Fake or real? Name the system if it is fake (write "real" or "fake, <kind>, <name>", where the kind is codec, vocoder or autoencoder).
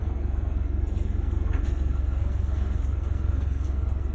fake, codec, SNAC